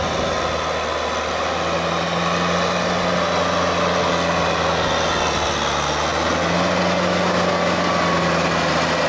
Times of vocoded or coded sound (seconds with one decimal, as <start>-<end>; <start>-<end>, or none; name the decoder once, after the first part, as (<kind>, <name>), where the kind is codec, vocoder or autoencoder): none